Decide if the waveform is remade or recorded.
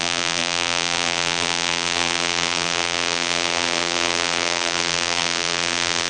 remade